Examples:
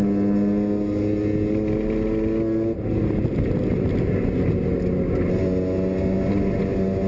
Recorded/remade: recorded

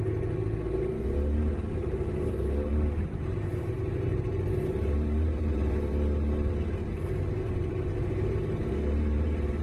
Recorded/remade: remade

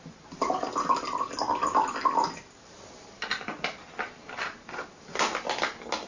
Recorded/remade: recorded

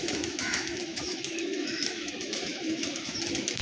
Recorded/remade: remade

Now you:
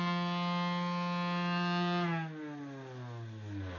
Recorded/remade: recorded